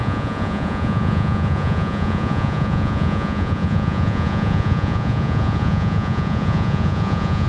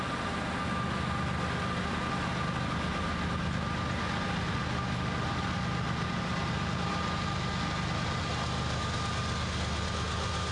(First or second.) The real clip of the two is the second